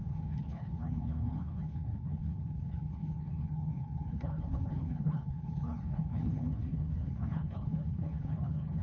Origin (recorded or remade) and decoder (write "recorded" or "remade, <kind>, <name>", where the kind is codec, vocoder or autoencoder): remade, codec, HILCodec